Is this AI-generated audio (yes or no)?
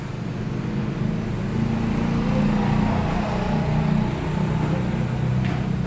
no